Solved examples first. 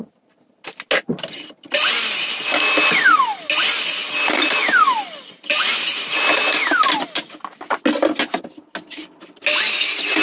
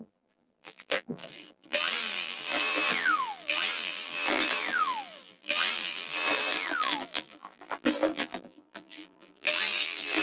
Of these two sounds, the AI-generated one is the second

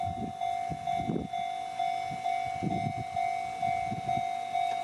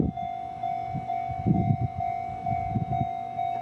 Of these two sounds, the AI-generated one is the second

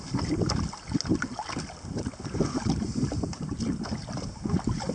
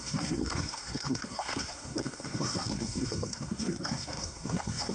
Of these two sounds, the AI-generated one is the second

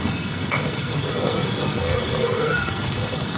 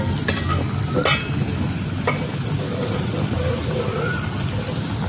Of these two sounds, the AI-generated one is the first